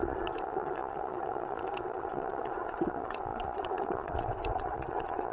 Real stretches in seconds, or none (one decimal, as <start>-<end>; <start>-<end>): none